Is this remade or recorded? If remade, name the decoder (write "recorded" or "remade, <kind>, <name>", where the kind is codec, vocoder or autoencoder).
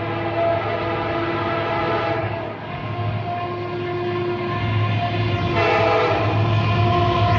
recorded